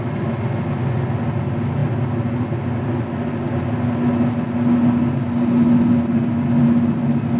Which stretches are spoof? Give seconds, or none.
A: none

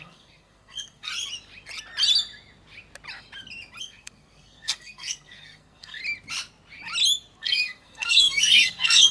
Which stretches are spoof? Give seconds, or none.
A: 0.0-1.1 (codec, SNAC); 3.8-6.0; 7.4-9.1

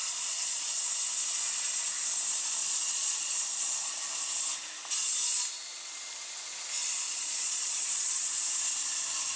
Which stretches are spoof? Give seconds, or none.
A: 0.0-0.7 (vocoder, Vocos); 2.6-3.9; 7.1-8.2